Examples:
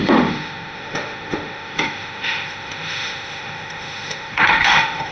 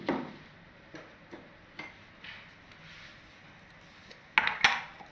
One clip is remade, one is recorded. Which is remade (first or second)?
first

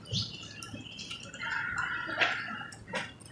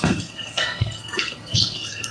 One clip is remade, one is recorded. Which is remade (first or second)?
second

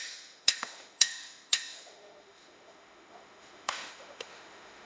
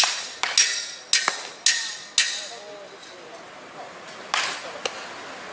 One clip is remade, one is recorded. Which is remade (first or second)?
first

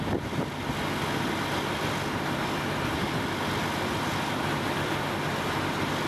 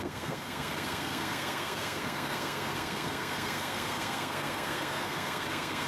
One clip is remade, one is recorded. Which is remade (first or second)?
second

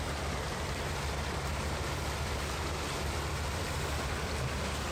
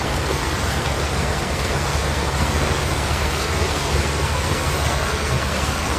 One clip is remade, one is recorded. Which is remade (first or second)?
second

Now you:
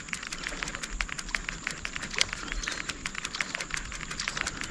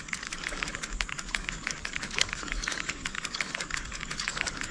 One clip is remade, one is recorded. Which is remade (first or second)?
second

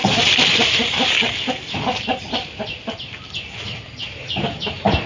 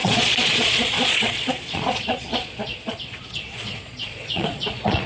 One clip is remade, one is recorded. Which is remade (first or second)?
second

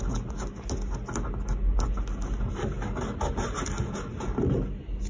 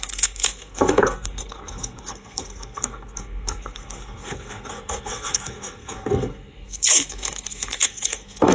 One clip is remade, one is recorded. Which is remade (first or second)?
second